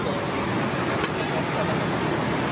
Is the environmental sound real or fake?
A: real